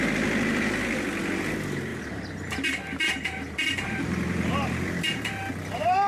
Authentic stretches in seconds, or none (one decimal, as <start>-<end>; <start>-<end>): 0.0-1.9; 4.5-6.1

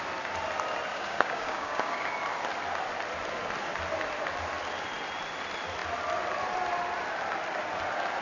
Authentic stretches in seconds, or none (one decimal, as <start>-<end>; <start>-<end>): 0.0-0.9; 2.1-8.2